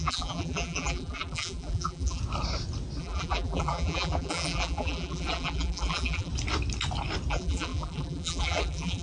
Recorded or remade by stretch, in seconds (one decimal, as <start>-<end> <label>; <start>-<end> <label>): 0.0-2.2 remade; 2.2-3.0 recorded; 3.0-6.3 remade; 6.3-7.3 recorded; 7.3-9.0 remade